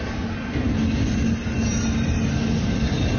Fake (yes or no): no